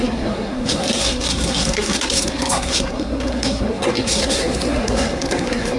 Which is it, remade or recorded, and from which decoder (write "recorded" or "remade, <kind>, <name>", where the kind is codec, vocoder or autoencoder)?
remade, codec, SNAC